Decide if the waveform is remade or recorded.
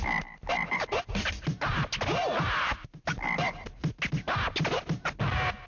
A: recorded